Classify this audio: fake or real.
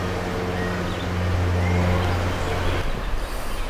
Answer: real